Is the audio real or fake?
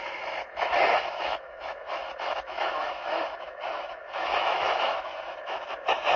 fake